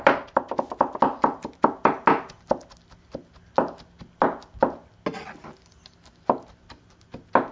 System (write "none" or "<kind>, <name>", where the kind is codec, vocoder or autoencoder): none